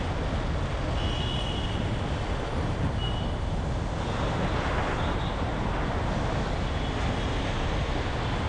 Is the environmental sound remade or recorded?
recorded